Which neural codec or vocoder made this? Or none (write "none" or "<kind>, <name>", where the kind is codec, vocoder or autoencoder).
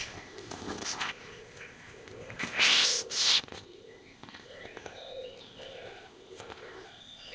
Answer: codec, ZipCodec